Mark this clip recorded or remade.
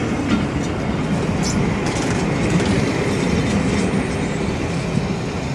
recorded